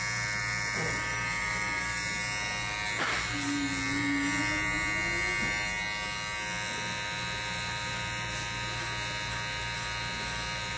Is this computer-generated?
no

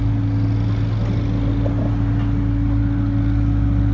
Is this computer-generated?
no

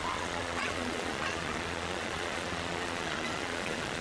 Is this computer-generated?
yes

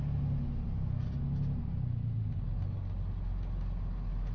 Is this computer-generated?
no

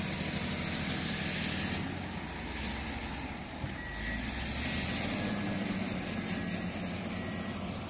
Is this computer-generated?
no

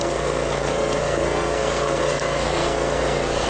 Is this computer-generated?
yes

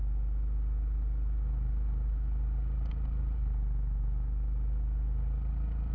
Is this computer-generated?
no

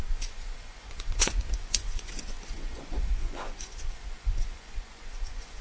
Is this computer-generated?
yes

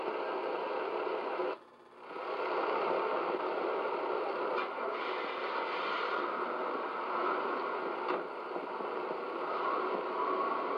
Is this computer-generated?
no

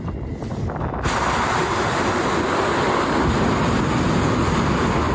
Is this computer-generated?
no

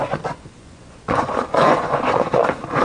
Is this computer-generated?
yes